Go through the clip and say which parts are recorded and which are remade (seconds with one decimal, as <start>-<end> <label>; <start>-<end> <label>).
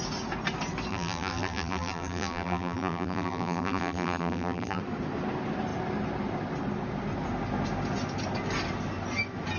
0.0-0.9 recorded; 0.9-4.8 remade; 4.8-9.6 recorded